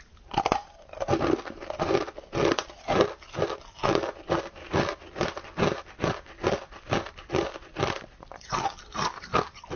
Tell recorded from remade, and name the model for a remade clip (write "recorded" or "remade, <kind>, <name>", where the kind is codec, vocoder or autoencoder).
recorded